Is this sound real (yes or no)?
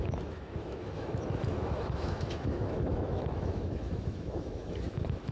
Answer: no